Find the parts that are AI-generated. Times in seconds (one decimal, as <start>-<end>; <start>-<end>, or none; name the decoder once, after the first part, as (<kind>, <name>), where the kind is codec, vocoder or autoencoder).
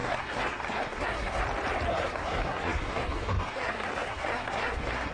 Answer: 0.0-1.4 (codec, SNAC); 1.9-5.1